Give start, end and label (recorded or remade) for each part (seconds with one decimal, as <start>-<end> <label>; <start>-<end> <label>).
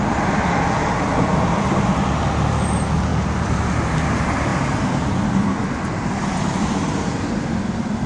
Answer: 0.0-8.1 recorded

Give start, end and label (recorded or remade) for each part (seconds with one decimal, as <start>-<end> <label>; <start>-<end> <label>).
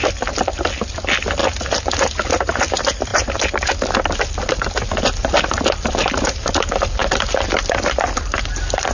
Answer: 0.0-1.4 remade; 1.4-2.7 recorded; 2.7-8.9 remade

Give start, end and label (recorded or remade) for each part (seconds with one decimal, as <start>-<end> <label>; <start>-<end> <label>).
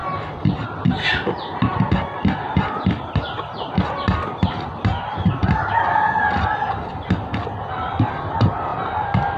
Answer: 0.0-9.4 recorded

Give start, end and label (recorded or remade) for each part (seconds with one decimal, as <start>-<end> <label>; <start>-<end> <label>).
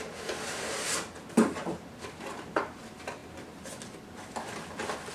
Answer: 0.0-3.2 recorded; 3.2-4.0 remade; 4.0-5.1 recorded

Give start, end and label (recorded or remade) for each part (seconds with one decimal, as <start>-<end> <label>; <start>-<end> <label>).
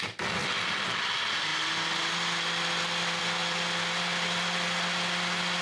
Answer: 0.0-5.6 recorded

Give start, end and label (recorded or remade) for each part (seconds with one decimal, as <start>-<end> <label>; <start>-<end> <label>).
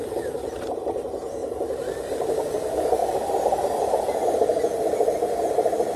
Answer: 0.0-0.6 remade; 0.6-1.4 recorded; 1.4-2.1 remade; 2.1-6.0 recorded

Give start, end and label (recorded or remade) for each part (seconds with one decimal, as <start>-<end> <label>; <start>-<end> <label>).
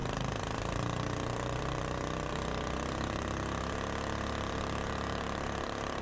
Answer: 0.0-6.0 remade